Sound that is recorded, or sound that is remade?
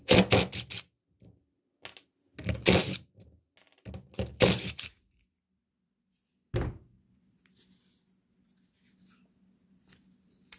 recorded